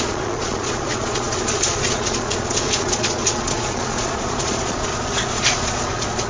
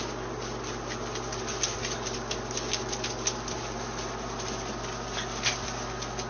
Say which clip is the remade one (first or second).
first